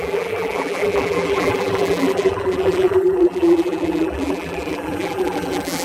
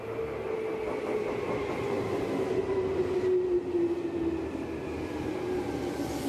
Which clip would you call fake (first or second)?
first